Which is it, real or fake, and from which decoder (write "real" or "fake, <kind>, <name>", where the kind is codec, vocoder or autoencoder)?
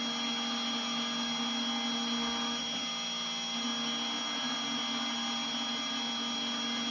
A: real